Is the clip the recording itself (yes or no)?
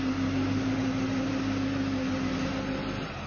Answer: yes